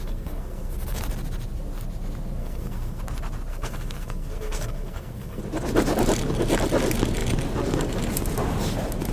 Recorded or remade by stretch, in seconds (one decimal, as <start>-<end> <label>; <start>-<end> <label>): 0.0-1.0 remade; 1.0-2.4 recorded; 2.4-3.0 remade; 3.0-3.5 recorded; 3.5-5.4 remade; 5.4-9.1 recorded